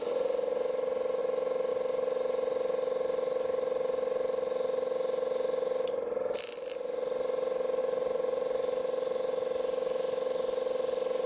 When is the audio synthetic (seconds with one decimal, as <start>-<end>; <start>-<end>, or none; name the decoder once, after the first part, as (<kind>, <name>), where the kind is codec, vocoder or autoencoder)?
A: 7.8-8.8 (vocoder, BigVGAN v2)